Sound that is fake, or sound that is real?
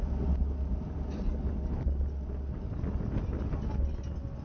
real